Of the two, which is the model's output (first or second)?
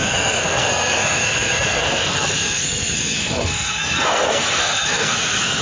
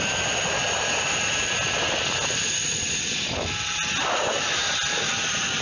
first